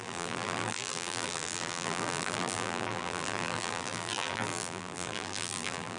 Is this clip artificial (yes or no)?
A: yes